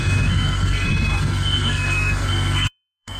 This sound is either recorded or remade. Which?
remade